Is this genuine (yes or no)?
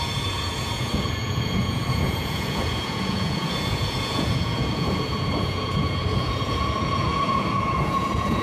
no